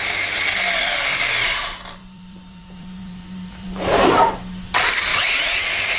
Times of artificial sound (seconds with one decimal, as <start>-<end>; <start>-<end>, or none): 2.0-4.3; 5.1-5.6